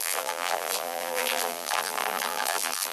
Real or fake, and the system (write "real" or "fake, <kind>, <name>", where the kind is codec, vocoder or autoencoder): fake, vocoder, BigVGAN v2